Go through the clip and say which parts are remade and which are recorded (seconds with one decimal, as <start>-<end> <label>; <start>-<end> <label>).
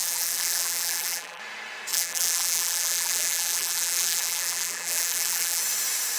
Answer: 0.0-1.4 remade; 1.4-1.9 recorded; 1.9-5.6 remade; 5.6-6.2 recorded